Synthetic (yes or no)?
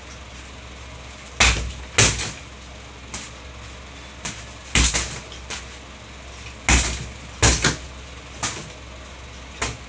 no